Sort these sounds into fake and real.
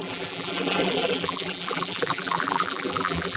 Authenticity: fake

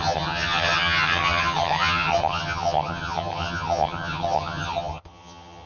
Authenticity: fake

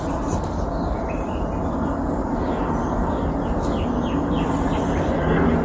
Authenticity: real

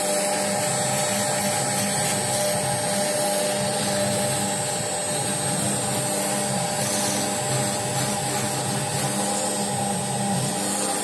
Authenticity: real